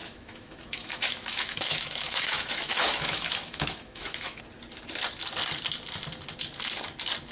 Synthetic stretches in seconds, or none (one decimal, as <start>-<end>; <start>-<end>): 0.0-4.4